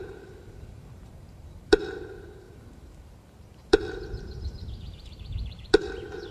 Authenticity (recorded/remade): remade